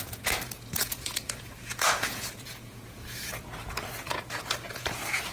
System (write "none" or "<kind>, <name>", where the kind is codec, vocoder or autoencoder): vocoder, Vocos